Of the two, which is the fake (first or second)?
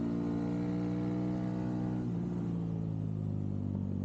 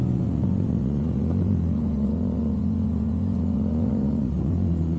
second